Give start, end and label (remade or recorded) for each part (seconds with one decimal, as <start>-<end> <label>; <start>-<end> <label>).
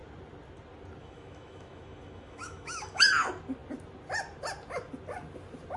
0.0-1.0 recorded; 1.0-3.1 remade; 3.1-5.8 recorded